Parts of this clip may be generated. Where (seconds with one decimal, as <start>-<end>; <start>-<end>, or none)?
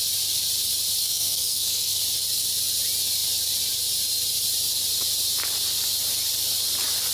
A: 1.0-2.0